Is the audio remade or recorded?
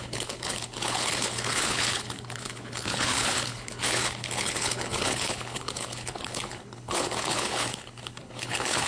remade